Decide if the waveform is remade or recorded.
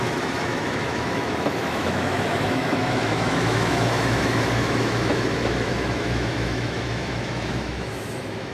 remade